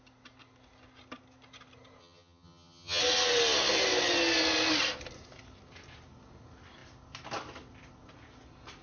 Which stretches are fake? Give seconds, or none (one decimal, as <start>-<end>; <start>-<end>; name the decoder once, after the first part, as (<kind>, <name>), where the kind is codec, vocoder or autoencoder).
2.0-3.0 (vocoder, HiFi-GAN)